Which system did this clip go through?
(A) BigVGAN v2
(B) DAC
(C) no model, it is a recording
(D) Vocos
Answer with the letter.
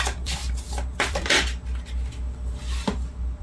A